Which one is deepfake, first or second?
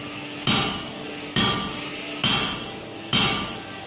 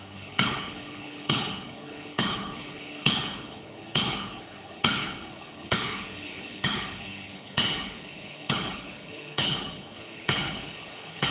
second